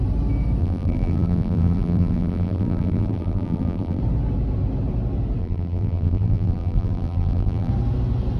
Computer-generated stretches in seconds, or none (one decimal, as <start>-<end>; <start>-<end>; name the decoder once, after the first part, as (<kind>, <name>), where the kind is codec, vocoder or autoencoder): 0.6-4.0 (vocoder, BigVGAN v2); 5.4-7.7